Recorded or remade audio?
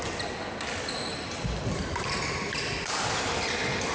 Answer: recorded